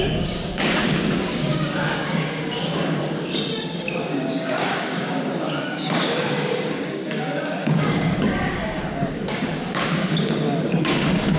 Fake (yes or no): yes